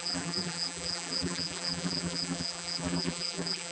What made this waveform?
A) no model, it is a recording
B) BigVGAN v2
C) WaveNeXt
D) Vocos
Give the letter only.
B